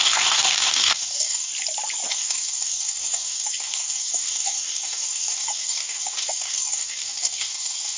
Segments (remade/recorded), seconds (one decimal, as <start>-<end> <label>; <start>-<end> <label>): 0.0-1.5 remade; 1.5-2.1 recorded; 2.1-8.0 remade